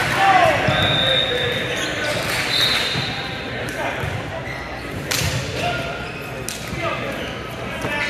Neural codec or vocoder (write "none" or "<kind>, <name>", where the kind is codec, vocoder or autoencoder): none